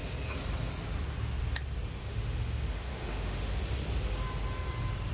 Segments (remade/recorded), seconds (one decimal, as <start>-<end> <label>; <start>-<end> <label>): 0.0-2.0 recorded; 2.0-3.6 remade; 3.6-5.1 recorded